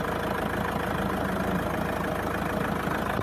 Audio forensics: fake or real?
real